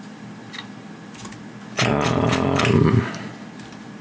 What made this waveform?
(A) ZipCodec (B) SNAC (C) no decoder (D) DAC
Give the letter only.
C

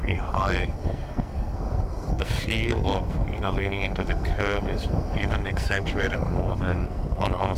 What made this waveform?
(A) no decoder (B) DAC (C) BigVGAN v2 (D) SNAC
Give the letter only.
D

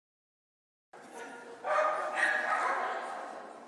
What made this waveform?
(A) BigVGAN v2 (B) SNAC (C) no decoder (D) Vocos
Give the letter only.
C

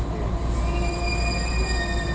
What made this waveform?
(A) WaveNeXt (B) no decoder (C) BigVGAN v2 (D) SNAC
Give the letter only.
B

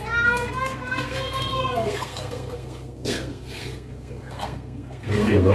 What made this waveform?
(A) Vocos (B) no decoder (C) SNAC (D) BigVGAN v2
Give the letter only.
C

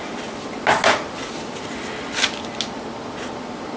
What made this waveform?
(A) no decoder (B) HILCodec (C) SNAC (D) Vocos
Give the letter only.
A